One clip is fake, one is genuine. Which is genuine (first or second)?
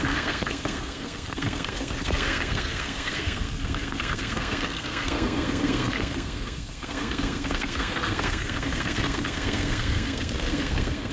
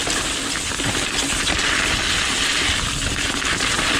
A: second